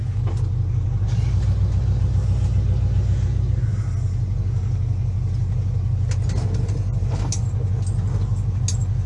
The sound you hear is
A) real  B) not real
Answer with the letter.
A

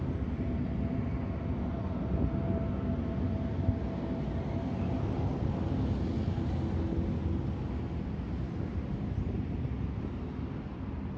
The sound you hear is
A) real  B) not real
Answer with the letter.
A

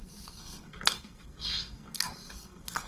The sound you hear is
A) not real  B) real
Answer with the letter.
A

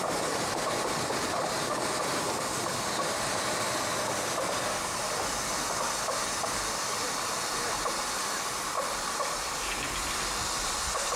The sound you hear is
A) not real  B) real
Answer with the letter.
A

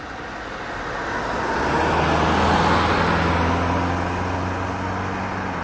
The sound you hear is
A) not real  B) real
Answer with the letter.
B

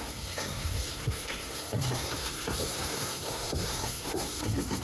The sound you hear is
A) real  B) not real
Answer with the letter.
B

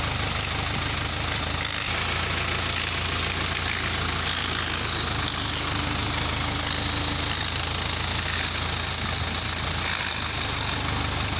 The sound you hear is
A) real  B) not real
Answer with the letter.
A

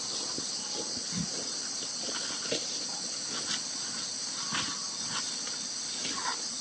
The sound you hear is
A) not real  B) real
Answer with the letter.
B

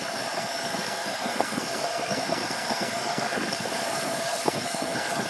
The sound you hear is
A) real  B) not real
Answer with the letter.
B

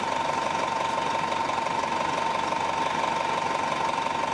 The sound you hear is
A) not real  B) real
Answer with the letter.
B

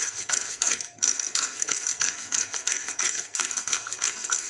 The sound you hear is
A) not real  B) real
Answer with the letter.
A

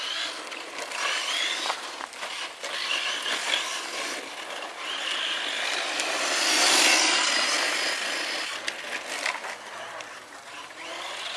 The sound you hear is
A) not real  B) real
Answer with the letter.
B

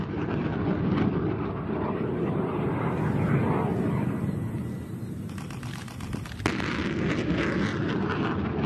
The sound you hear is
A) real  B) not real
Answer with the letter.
A